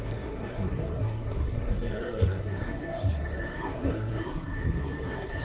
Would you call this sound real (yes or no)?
no